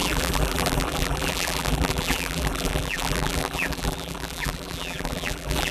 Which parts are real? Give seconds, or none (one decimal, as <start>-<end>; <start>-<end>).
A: none